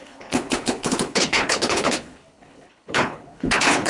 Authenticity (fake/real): fake